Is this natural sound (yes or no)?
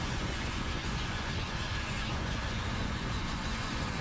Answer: no